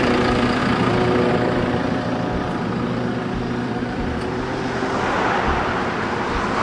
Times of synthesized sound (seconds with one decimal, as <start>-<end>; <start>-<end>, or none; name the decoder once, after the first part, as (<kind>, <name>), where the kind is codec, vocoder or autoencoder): 0.0-6.6 (vocoder, BigVGAN v2)